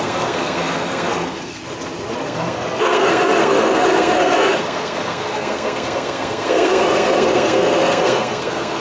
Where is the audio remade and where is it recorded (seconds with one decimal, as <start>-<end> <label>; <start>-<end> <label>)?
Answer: 0.0-1.6 remade; 1.6-2.2 recorded; 2.2-8.8 remade